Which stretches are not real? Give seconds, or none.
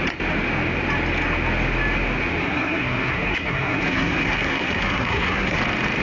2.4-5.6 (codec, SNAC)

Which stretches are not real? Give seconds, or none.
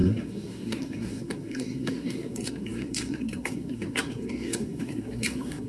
0.0-5.7 (codec, SNAC)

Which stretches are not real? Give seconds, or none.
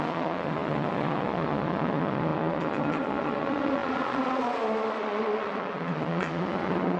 0.0-7.0 (vocoder, Vocos)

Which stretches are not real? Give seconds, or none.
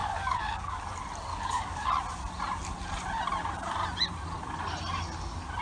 0.0-0.8 (codec, DAC); 1.3-1.9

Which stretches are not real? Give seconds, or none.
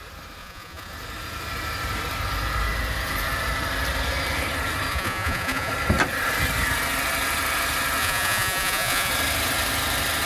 0.4-0.9 (vocoder, Vocos); 4.9-5.7; 8.0-9.1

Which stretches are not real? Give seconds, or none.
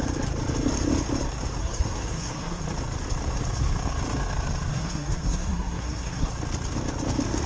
1.6-2.6 (codec, SNAC); 4.7-6.3